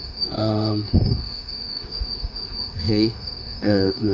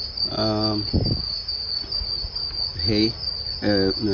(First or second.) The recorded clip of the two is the second